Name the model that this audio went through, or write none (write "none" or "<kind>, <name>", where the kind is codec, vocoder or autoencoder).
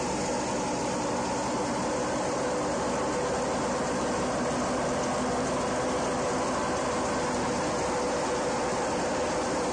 none